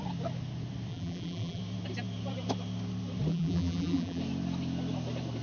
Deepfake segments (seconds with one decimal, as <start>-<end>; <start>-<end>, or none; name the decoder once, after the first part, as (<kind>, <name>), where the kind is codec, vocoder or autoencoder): 0.9-1.6 (vocoder, BigVGAN v2); 3.3-4.2